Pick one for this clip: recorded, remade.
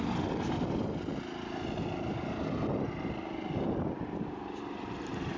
recorded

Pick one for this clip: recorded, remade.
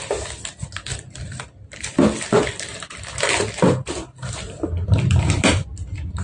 recorded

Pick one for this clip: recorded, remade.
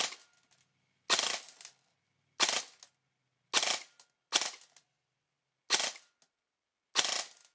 recorded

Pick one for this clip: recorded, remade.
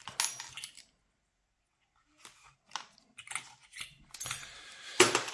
recorded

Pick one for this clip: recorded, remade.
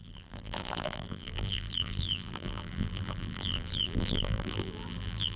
remade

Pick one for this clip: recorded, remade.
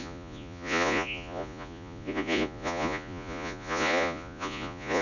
remade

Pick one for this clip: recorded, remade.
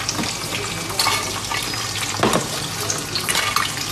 recorded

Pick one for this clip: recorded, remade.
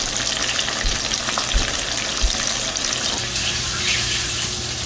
recorded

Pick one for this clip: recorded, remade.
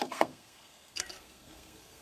remade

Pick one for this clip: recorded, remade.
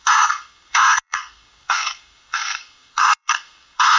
remade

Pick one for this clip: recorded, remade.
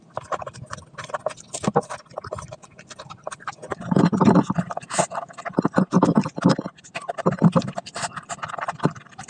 recorded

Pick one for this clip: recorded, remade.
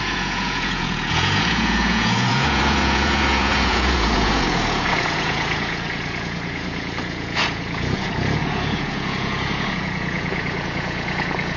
remade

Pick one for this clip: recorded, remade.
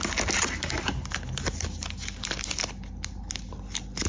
recorded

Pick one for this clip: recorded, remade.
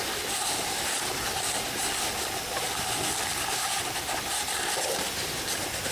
recorded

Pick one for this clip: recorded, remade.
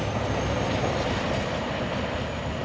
recorded